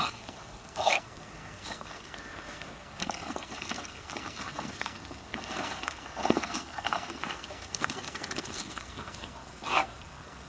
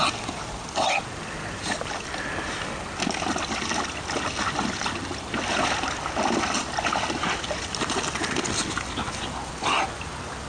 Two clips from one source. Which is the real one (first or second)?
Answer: second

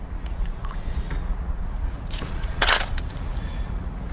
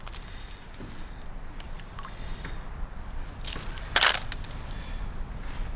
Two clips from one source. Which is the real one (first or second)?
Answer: second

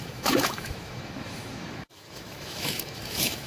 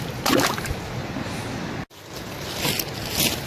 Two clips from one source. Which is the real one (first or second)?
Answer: second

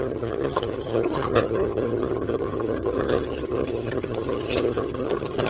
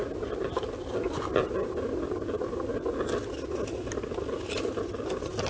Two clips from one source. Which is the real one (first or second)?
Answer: second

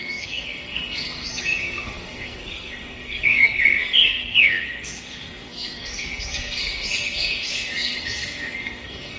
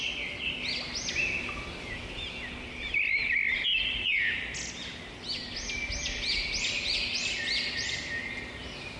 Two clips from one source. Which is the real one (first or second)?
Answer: second